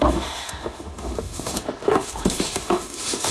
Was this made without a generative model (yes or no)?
no